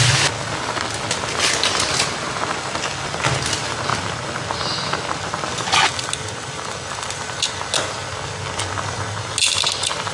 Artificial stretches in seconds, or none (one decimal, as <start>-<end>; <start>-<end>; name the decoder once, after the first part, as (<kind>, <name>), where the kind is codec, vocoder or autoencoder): none